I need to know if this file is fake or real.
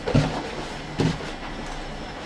real